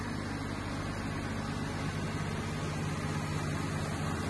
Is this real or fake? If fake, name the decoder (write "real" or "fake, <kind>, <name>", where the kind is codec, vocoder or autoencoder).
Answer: real